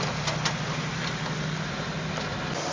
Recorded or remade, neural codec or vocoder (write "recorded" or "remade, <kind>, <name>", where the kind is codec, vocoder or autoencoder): recorded